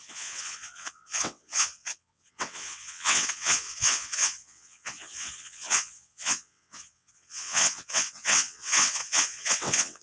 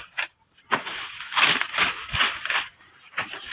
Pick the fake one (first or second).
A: first